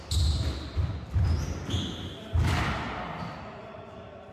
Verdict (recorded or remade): recorded